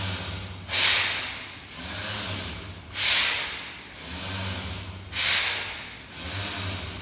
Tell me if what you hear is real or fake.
real